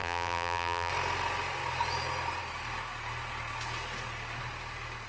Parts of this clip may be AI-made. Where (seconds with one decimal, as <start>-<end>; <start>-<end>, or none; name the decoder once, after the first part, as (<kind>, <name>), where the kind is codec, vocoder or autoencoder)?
0.0-0.9 (vocoder, BigVGAN v2)